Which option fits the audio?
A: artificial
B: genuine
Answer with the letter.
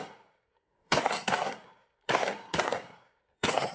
A